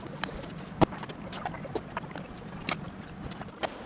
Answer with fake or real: real